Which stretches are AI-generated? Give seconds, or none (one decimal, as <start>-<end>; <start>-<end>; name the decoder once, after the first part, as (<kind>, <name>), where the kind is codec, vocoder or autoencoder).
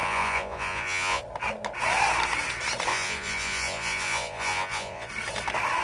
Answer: 0.0-1.2 (vocoder, Vocos); 2.9-5.1